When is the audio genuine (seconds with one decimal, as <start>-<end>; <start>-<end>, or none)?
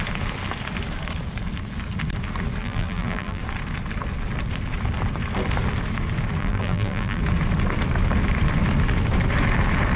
0.0-2.6; 3.4-6.4; 7.2-10.0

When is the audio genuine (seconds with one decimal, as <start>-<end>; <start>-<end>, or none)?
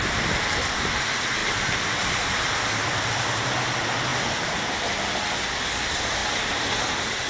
0.0-1.4; 3.4-4.1; 4.7-7.3